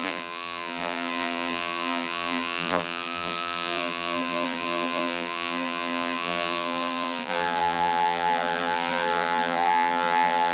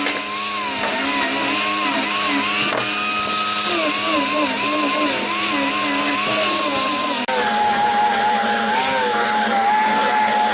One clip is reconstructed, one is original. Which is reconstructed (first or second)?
first